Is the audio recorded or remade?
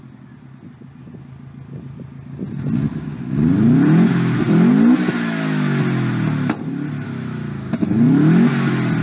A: recorded